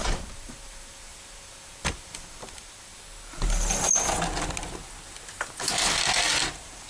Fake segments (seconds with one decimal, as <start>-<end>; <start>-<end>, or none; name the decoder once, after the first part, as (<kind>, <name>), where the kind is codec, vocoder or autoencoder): 0.0-2.9 (vocoder, BigVGAN v2); 6.5-6.9